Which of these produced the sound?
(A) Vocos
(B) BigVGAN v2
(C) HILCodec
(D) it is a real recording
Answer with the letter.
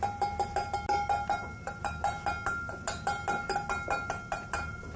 D